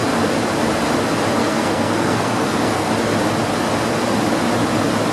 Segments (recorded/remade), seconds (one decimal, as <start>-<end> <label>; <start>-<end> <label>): 0.0-1.4 recorded; 1.4-2.9 remade; 2.9-5.1 recorded